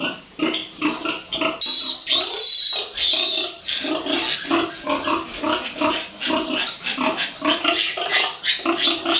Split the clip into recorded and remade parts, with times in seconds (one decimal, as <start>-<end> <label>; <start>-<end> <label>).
0.0-9.2 recorded